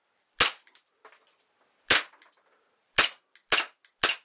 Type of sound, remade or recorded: recorded